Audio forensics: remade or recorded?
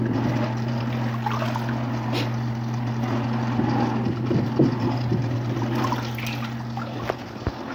recorded